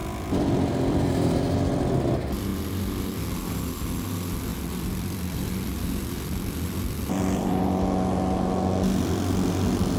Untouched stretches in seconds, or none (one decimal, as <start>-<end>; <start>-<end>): 1.1-4.5; 7.6-10.0